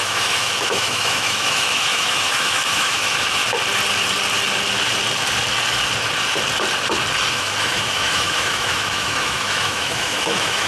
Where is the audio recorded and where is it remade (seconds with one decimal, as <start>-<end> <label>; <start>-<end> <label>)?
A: 0.0-3.4 remade; 3.4-7.3 recorded; 7.3-10.7 remade